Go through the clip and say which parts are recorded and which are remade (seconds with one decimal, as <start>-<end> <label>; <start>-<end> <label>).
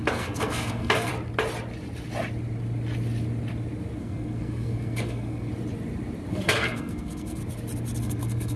0.0-1.1 remade; 1.1-4.0 recorded; 4.0-5.5 remade; 5.5-6.3 recorded; 6.3-7.4 remade; 7.4-8.0 recorded; 8.0-8.6 remade